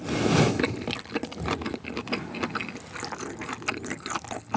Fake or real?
real